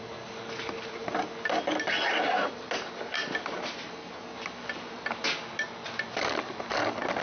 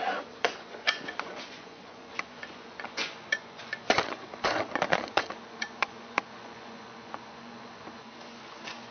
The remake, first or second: second